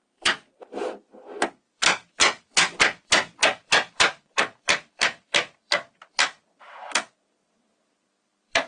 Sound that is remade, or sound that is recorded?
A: remade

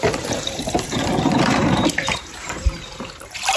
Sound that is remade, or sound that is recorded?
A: remade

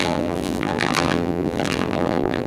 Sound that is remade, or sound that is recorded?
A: remade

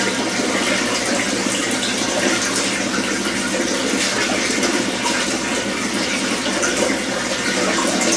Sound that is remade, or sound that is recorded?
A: recorded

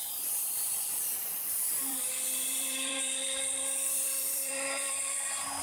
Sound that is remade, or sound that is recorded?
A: remade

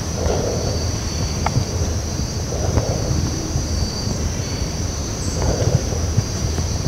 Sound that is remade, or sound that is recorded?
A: remade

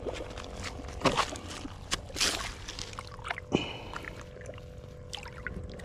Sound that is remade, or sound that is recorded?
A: recorded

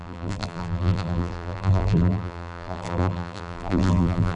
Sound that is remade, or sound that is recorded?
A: remade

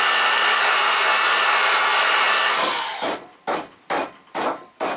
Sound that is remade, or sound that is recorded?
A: recorded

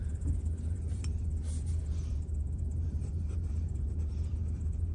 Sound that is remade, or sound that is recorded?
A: remade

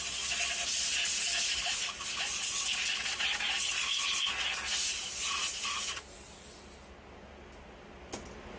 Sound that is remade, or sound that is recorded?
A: recorded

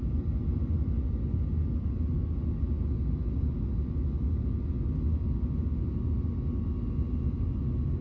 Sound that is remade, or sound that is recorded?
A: recorded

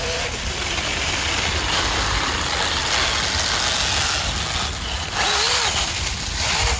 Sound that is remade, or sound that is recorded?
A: recorded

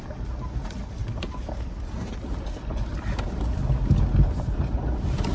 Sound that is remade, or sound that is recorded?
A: recorded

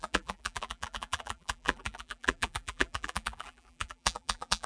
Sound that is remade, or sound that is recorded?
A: remade